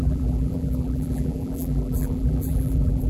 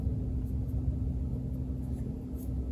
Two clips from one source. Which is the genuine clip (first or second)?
second